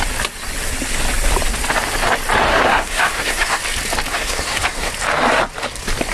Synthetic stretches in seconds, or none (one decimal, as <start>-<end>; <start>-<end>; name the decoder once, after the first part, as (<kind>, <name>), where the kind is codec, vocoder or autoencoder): 2.5-3.6 (codec, SNAC); 4.1-4.9